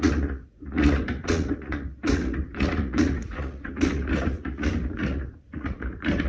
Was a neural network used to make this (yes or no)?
yes